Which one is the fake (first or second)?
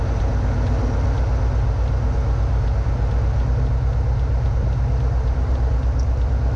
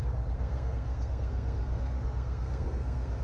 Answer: second